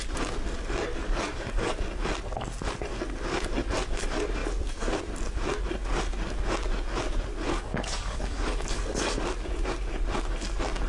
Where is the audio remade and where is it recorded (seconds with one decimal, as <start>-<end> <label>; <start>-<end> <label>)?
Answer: 0.0-1.0 recorded; 1.0-1.8 remade; 1.8-7.5 recorded; 7.5-8.8 remade; 8.8-10.9 recorded